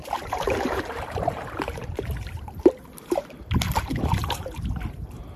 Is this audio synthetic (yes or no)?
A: yes